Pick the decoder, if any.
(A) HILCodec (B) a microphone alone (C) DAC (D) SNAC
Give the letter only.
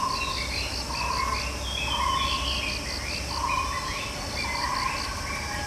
B